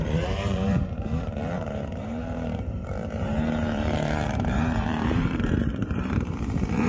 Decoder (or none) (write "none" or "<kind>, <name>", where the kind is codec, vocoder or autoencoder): vocoder, BigVGAN v2